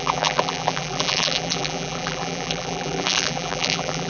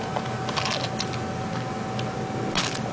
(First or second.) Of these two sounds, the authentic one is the second